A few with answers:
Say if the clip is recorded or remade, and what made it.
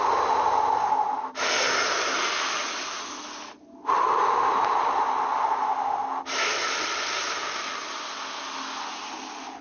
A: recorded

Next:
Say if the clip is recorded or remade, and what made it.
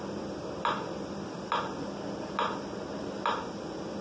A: recorded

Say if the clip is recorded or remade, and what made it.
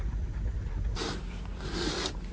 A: recorded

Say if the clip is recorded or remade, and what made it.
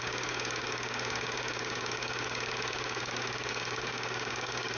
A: remade, codec, DAC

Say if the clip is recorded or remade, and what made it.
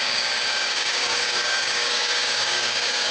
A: remade, codec, DAC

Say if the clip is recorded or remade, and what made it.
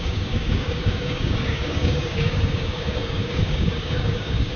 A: remade, codec, DAC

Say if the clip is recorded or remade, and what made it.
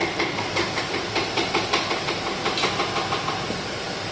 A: recorded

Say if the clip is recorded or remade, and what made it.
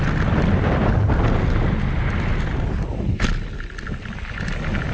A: recorded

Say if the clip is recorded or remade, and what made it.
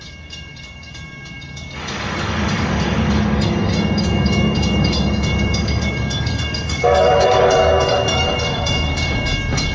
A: remade, codec, DAC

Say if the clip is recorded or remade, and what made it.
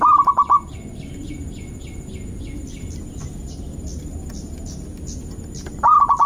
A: recorded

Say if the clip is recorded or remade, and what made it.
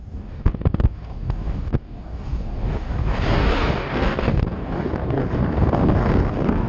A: remade, codec, DAC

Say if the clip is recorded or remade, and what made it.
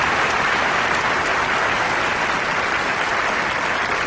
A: recorded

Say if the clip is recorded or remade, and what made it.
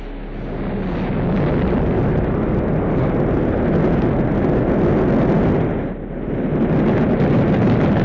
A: recorded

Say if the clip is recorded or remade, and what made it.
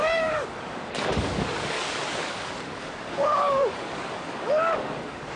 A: remade, codec, DAC